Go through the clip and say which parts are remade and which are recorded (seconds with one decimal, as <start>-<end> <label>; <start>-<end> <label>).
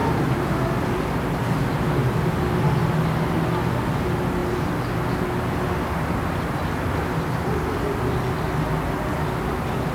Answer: 0.0-9.9 recorded